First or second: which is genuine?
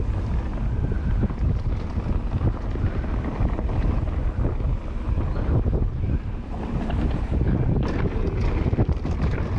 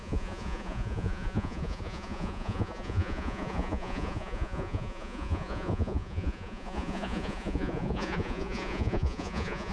first